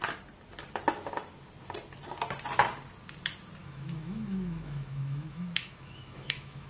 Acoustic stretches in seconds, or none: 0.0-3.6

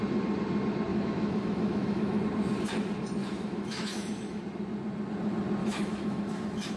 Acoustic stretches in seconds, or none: 0.0-0.9; 2.2-3.2; 4.4-5.6

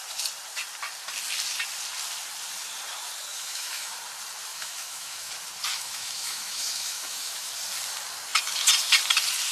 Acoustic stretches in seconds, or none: 0.0-3.3; 3.9-4.5; 5.3-5.7; 7.5-9.5

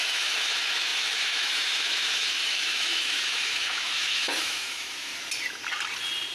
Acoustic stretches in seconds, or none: 5.1-6.3